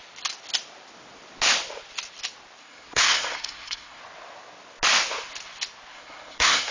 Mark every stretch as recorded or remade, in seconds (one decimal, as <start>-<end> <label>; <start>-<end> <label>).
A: 0.0-2.6 recorded; 2.6-4.0 remade; 4.0-5.9 recorded; 5.9-6.7 remade